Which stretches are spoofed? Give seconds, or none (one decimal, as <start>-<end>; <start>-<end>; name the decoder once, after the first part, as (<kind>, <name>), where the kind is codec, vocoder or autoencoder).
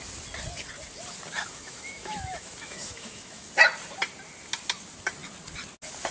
1.4-3.5 (autoencoder, DAC-VAE)